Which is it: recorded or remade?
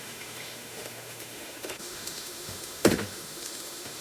remade